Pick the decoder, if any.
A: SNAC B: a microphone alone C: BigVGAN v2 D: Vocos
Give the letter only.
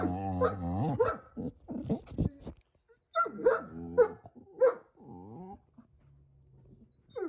B